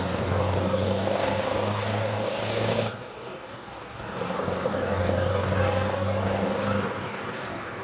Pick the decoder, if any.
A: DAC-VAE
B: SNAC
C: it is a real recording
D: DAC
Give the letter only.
D